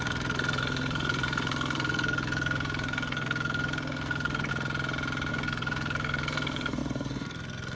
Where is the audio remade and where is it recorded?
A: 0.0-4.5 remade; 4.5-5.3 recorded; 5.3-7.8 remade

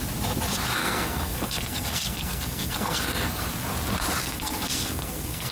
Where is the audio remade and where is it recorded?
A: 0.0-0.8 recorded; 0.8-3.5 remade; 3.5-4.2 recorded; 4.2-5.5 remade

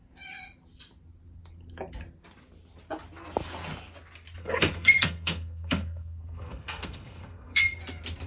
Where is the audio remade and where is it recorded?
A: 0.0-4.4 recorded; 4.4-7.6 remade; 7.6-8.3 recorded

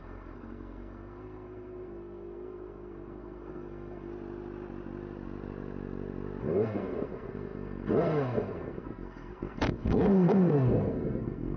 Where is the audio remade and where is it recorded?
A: 0.0-4.1 remade; 4.1-6.4 recorded; 6.4-11.6 remade